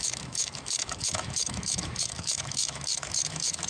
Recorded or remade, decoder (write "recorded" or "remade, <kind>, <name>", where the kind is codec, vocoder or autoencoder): remade, autoencoder, DAC-VAE